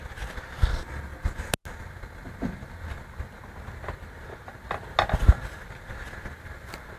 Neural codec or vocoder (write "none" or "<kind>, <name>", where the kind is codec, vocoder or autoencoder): none